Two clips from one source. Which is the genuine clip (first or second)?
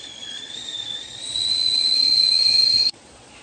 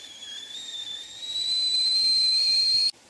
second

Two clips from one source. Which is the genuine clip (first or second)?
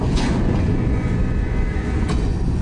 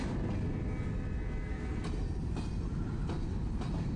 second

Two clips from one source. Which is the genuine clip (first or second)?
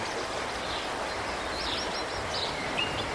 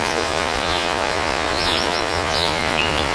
first